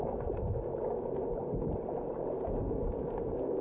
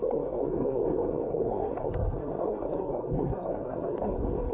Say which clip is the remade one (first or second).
second